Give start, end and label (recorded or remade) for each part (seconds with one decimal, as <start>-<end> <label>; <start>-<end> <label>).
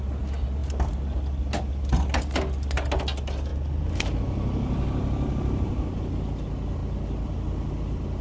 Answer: 0.0-8.2 recorded